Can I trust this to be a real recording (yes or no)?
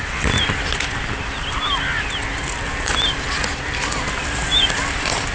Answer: yes